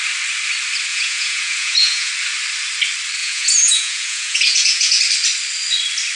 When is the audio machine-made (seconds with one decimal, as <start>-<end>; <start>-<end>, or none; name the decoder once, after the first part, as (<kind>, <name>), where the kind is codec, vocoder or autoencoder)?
0.9-2.1 (vocoder, Vocos); 3.2-5.0